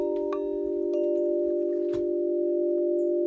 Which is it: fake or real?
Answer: real